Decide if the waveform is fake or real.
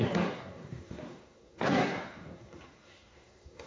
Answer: fake